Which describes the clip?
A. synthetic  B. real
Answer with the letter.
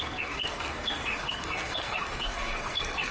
A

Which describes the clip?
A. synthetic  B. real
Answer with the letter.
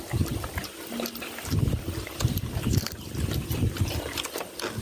B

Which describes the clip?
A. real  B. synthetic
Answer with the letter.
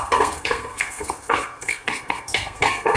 B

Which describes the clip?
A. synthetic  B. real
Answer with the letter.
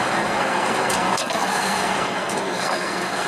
A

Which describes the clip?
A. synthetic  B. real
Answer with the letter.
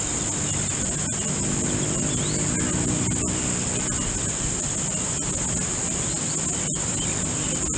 B